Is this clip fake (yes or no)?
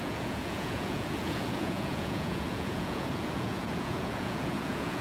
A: yes